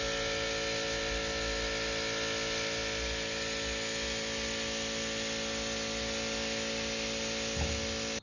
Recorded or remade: recorded